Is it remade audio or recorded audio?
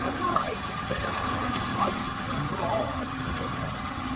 remade